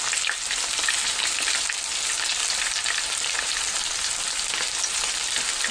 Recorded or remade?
recorded